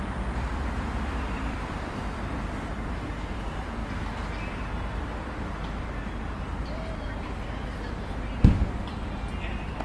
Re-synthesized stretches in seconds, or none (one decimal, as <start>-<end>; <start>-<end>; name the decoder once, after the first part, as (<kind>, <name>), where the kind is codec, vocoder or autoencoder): 0.0-3.8 (vocoder, BigVGAN v2); 4.7-9.8